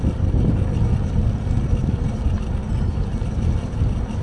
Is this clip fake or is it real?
real